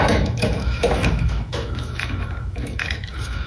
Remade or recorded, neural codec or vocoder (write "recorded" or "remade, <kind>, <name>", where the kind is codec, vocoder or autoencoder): remade, autoencoder, DAC-VAE